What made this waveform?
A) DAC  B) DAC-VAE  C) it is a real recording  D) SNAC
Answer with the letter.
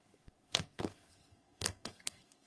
D